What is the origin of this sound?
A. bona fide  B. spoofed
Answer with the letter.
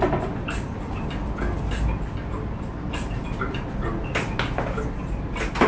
A